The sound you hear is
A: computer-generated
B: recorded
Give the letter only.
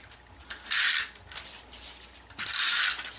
B